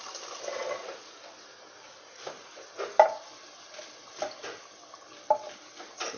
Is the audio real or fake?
real